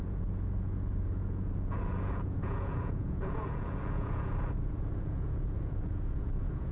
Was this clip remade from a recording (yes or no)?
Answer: yes